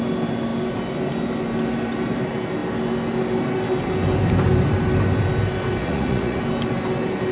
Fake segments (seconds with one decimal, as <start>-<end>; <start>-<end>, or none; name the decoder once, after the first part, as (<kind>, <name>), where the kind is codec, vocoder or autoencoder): 5.8-6.4 (vocoder, Vocos)